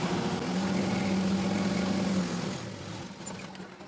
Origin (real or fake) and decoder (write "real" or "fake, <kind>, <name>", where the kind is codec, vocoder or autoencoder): real